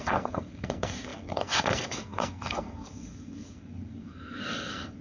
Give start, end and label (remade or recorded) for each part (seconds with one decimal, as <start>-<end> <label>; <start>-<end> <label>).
0.0-5.0 remade